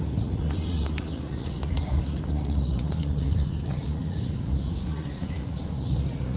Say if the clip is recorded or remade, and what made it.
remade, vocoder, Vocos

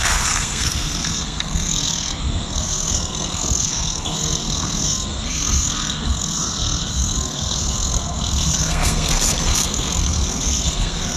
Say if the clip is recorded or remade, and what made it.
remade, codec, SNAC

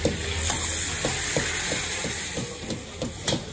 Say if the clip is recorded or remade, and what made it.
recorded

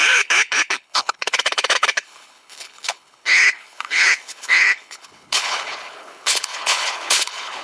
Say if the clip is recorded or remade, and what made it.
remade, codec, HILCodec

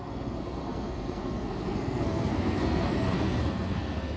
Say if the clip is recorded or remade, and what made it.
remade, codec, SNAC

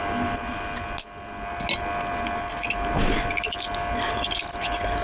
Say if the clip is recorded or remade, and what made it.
recorded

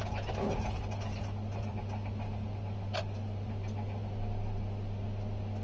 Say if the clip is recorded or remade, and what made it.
recorded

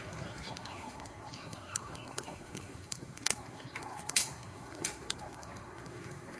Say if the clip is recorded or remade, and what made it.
remade, codec, SNAC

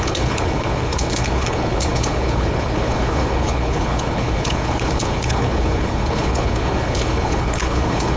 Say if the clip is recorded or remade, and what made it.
remade, codec, HILCodec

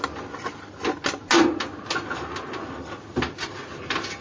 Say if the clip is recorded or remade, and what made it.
recorded